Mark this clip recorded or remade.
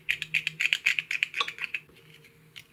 recorded